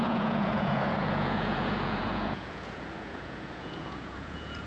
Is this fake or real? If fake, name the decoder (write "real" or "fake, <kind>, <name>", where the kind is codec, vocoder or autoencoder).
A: fake, vocoder, Vocos